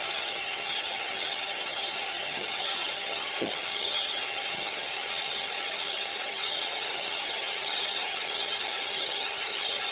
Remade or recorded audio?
remade